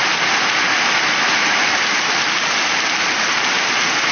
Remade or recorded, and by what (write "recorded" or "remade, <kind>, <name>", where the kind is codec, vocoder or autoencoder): recorded